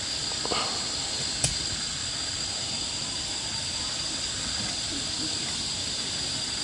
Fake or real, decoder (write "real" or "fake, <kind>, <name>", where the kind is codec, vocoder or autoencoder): real